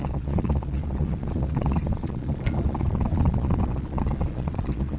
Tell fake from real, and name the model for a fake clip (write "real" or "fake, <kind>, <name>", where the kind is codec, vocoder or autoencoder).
fake, vocoder, Vocos